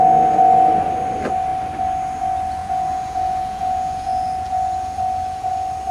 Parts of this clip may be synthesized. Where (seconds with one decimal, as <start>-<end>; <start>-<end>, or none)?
2.6-5.5

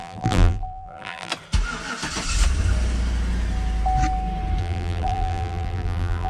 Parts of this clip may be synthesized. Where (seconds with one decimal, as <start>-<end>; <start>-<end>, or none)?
0.0-1.3; 4.6-6.3

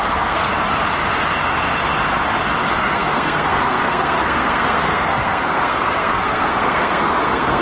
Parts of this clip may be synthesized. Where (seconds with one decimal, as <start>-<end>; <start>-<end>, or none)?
0.0-0.5; 2.7-7.6